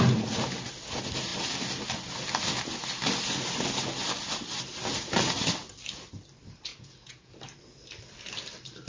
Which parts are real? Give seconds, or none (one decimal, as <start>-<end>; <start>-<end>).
0.0-6.7; 7.3-8.9